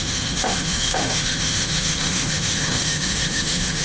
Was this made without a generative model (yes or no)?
no